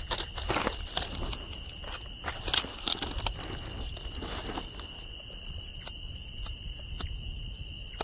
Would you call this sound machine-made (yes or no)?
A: no